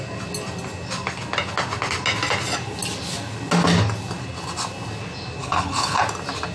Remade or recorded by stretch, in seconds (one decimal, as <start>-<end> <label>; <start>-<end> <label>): 0.0-5.4 recorded; 5.4-6.0 remade; 6.0-6.5 recorded